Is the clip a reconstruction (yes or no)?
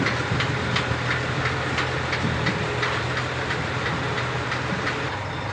no